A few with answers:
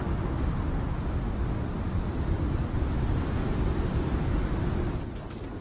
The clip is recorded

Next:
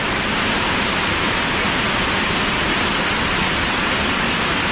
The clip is recorded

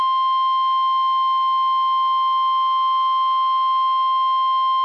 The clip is recorded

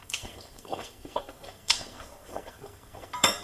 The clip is remade